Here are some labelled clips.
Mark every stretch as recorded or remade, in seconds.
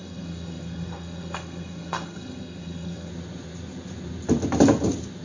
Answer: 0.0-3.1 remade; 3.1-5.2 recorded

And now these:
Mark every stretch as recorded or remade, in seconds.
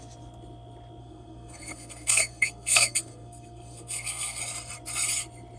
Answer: 0.0-1.0 recorded; 1.0-4.4 remade; 4.4-5.6 recorded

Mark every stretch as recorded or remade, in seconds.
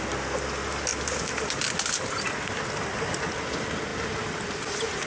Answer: 0.0-5.1 recorded